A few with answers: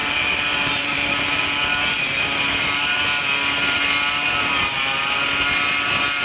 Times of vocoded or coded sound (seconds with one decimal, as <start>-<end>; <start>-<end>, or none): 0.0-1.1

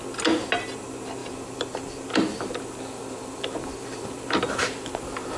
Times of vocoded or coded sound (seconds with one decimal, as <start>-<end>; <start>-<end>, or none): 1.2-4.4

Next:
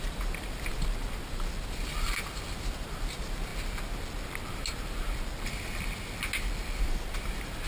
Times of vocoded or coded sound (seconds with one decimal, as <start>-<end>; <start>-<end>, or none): 0.0-3.5; 6.8-7.7